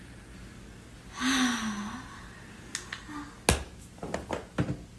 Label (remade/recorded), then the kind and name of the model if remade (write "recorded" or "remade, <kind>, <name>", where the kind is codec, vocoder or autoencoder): recorded